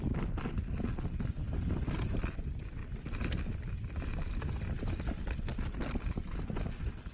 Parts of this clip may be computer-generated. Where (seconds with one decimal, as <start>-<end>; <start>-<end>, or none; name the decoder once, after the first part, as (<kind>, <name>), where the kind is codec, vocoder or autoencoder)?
none